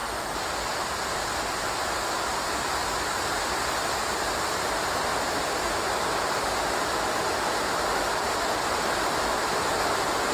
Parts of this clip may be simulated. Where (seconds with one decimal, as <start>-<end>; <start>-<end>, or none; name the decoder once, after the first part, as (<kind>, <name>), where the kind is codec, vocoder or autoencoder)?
0.0-2.8 (vocoder, BigVGAN v2); 4.1-10.3